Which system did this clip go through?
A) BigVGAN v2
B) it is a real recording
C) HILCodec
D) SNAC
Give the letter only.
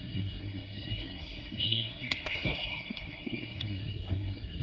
D